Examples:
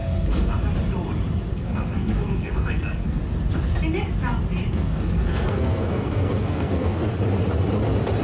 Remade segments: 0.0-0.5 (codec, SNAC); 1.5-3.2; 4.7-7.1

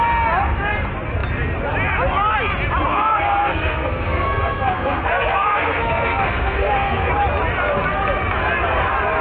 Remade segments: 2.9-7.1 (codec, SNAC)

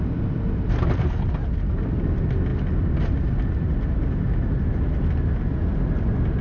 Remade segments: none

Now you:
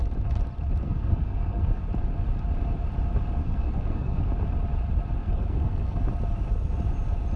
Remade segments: 0.8-1.8 (codec, SNAC); 3.4-4.3; 5.2-6.0

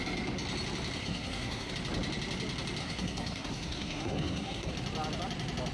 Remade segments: 1.0-1.7 (codec, SNAC); 2.8-4.7

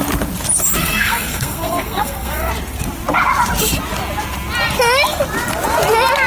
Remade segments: 0.8-2.5 (codec, SNAC)